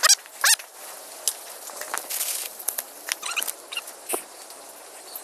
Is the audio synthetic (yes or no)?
no